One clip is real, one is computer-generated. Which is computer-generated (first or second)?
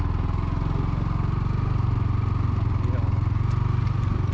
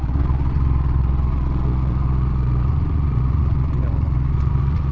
second